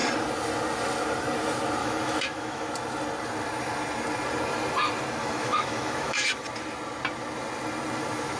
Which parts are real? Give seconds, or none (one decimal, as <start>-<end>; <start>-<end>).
0.0-1.8; 2.7-5.2; 6.4-8.4